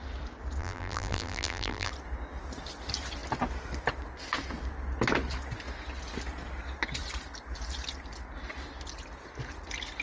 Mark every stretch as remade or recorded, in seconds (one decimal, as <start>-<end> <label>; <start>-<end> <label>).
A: 0.0-0.6 recorded; 0.6-1.9 remade; 1.9-10.0 recorded